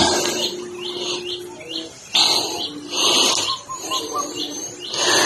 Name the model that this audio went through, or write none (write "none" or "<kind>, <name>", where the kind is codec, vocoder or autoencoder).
none